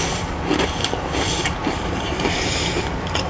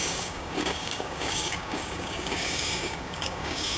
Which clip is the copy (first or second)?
second